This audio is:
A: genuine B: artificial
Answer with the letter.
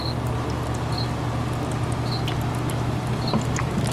A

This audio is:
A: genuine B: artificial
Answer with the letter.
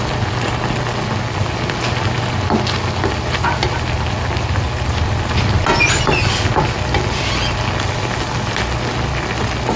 A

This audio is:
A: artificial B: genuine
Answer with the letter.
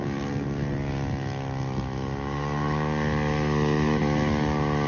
B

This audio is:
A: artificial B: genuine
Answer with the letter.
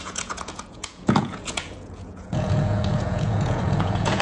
A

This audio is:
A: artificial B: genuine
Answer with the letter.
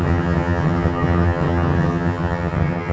A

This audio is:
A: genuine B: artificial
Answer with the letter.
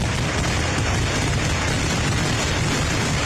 A